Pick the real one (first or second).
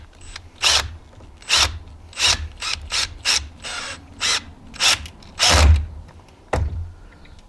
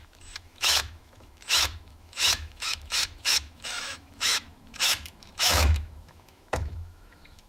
first